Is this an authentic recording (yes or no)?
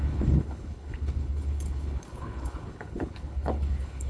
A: no